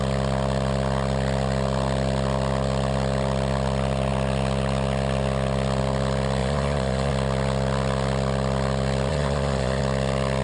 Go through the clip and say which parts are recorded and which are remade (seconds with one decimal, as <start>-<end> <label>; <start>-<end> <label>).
0.0-6.4 recorded; 6.4-7.1 remade; 7.1-9.1 recorded; 9.1-9.8 remade; 9.8-10.4 recorded